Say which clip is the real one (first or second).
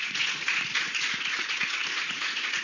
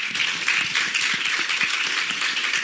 second